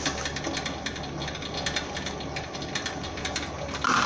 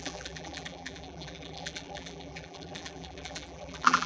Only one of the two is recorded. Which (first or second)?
first